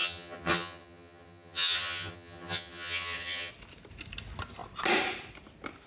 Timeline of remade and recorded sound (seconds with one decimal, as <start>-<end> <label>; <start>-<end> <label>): 0.0-3.5 remade; 3.5-5.9 recorded